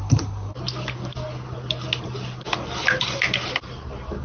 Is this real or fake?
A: real